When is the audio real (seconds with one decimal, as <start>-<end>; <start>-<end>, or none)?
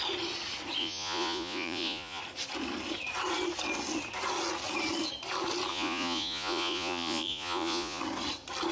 0.0-0.8; 2.2-5.7; 8.0-8.7